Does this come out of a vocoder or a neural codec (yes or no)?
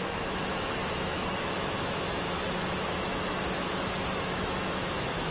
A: yes